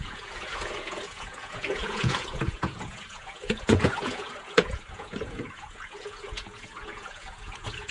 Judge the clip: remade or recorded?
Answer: remade